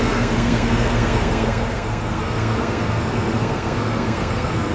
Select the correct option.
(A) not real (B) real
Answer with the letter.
A